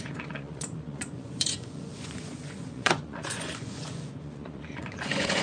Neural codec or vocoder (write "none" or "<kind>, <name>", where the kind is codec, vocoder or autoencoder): vocoder, Vocos